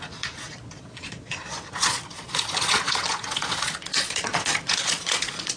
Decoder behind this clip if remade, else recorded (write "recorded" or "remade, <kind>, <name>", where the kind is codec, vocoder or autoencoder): remade, vocoder, Vocos